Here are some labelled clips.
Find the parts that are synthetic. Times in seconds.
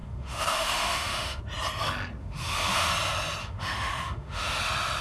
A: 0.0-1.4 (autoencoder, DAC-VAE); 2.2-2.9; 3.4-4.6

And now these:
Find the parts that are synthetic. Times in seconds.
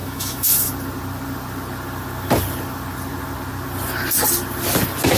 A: 0.0-0.7 (autoencoder, DAC-VAE)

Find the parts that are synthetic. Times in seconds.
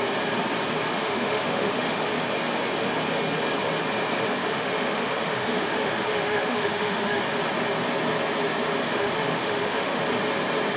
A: 0.9-2.0 (autoencoder, DAC-VAE); 4.4-7.2; 8.8-10.0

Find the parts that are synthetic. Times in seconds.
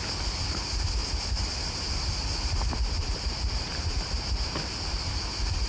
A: none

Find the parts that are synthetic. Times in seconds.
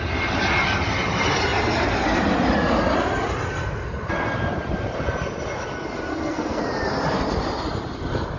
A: 6.1-6.6 (codec, SNAC)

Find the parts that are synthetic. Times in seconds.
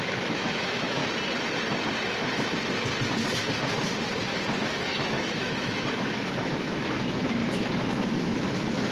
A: 0.0-1.0 (autoencoder, DAC-VAE); 4.6-8.9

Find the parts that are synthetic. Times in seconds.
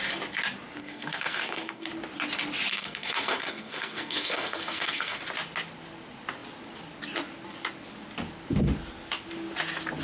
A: 0.8-1.9 (codec, SNAC); 2.7-5.2